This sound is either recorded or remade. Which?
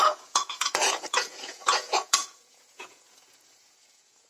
remade